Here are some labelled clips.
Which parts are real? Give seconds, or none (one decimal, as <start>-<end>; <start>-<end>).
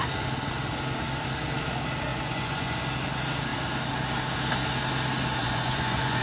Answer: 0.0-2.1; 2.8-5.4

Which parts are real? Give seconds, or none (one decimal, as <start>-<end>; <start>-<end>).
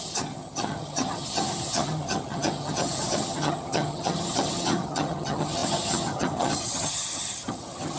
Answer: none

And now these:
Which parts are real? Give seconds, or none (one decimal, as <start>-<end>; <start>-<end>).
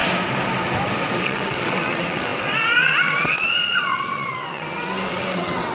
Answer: 0.0-1.2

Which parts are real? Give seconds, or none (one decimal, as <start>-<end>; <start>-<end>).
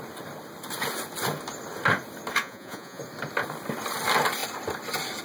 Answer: 0.0-2.4; 3.0-5.2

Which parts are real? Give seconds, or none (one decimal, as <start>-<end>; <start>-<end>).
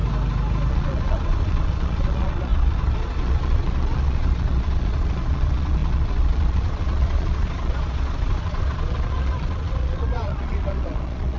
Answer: 0.0-0.7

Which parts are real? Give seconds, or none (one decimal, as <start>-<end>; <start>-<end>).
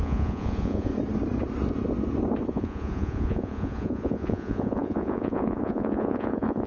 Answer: 0.9-2.5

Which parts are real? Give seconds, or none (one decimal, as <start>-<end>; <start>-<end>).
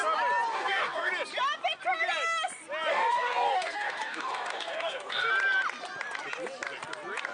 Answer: 0.0-0.5; 1.1-2.9; 5.3-7.3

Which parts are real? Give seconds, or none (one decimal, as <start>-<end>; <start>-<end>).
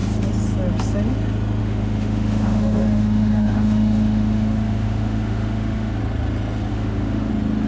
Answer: 0.0-1.6; 6.0-6.7; 7.3-7.7